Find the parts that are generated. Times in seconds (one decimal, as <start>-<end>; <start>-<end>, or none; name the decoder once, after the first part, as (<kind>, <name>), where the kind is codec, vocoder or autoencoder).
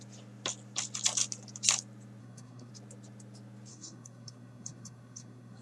2.2-2.7 (codec, SNAC); 3.7-5.6